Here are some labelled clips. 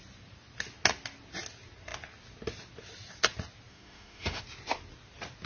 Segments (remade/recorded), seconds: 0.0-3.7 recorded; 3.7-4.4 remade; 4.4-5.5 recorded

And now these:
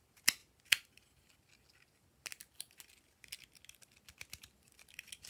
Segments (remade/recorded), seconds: 0.0-5.3 recorded

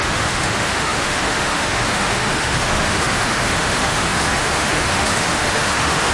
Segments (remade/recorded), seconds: 0.0-6.1 remade

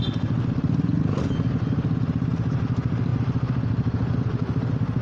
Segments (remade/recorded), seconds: 0.0-5.0 recorded

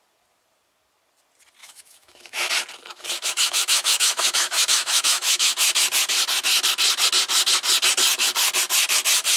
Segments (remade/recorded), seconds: 0.0-1.6 recorded; 1.6-2.5 remade; 2.5-2.9 recorded; 2.9-5.5 remade; 5.5-9.4 recorded